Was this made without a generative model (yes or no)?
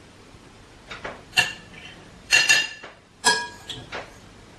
no